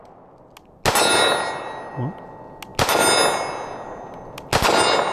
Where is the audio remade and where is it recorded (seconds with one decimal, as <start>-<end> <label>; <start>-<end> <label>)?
0.0-5.1 recorded